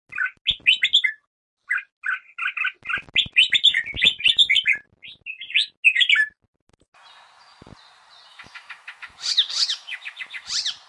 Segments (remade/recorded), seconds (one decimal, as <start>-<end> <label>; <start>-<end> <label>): 0.0-8.3 recorded; 8.3-10.5 remade; 10.5-10.9 recorded